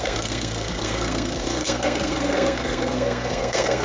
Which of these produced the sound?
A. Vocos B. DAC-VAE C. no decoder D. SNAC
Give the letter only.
D